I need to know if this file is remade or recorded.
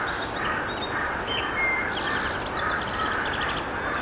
recorded